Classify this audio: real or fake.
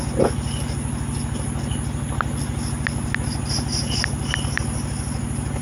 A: real